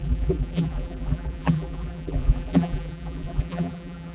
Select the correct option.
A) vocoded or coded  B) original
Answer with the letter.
A